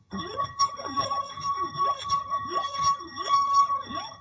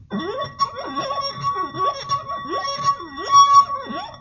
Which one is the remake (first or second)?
first